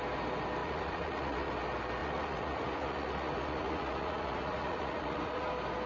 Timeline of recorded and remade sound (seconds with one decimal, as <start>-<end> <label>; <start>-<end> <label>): 0.0-0.6 recorded; 0.6-1.5 remade; 1.5-2.0 recorded; 2.0-5.5 remade; 5.5-5.9 recorded